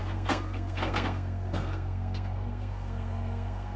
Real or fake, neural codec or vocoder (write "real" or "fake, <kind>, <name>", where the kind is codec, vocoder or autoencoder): fake, codec, SNAC